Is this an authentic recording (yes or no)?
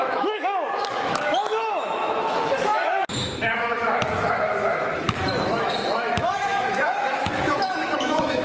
no